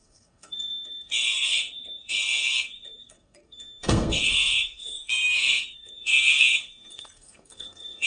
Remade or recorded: remade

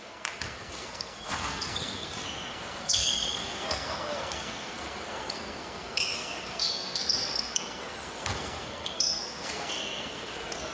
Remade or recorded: remade